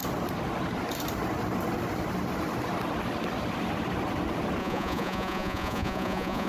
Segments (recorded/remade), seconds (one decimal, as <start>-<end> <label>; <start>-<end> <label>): 0.0-4.6 recorded; 4.6-6.5 remade